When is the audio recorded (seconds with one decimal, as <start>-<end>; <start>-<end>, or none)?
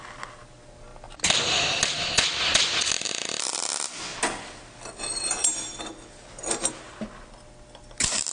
0.0-8.3